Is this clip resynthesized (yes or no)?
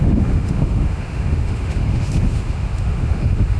yes